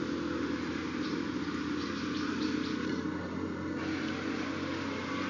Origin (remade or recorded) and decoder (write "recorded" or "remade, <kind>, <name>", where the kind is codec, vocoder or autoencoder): recorded